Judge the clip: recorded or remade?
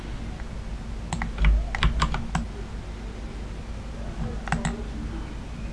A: recorded